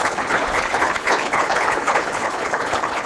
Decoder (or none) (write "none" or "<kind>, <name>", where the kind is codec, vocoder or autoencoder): codec, HILCodec